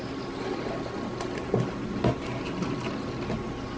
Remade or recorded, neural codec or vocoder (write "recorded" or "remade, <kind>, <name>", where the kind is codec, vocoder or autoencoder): recorded